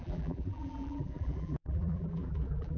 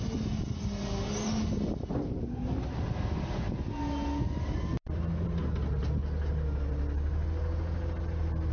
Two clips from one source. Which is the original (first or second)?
second